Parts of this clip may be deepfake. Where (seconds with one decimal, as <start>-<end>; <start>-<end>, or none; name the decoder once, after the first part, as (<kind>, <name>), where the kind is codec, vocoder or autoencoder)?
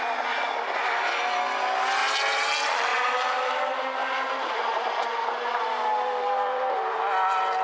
2.0-2.5 (vocoder, BigVGAN v2); 2.9-3.5; 4.0-7.0